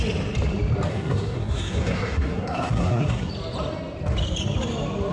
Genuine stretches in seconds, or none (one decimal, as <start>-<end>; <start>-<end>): 0.0-0.9; 3.3-5.1